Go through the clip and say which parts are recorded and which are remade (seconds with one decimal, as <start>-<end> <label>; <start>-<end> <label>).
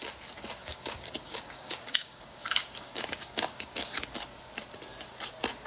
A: 0.0-0.6 recorded; 0.6-4.0 remade; 4.0-5.7 recorded